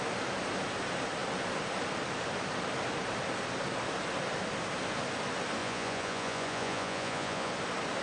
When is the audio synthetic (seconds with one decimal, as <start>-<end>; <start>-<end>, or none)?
5.6-7.5